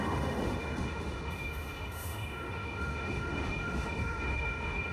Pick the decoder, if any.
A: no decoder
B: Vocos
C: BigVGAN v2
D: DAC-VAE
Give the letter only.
D